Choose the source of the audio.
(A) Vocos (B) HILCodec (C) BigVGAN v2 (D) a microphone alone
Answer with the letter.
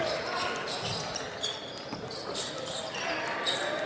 D